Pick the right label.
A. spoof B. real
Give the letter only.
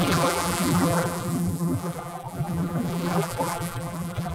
A